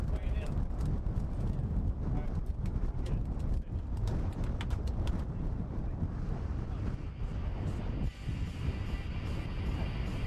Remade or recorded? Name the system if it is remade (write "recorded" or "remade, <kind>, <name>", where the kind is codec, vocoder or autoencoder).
recorded